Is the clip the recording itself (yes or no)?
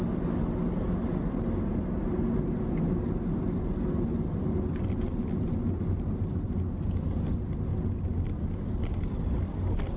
yes